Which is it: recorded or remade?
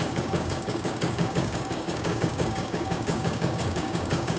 remade